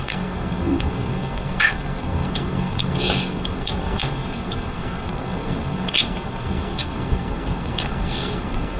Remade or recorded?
remade